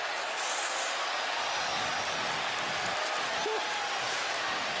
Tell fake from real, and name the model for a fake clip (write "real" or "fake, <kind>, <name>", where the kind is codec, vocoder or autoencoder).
real